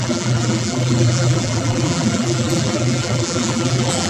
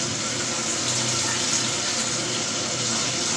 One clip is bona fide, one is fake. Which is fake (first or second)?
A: first